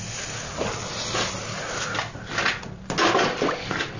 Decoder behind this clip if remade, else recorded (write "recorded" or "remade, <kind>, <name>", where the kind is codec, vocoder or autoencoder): recorded